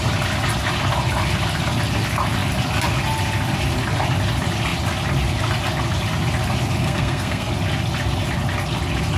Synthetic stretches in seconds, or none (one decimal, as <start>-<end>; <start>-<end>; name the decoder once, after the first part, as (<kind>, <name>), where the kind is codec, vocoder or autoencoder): 6.8-7.5 (codec, SNAC)